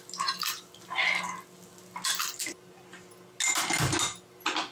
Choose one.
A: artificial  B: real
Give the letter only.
B